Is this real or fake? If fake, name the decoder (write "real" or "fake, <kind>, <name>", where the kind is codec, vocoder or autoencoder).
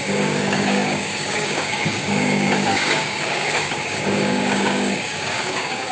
fake, codec, DAC